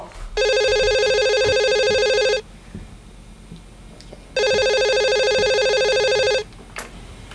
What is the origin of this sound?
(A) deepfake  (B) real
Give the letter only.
B